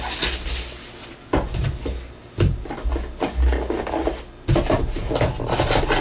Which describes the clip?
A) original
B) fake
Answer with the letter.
A